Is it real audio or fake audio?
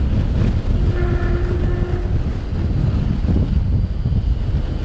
real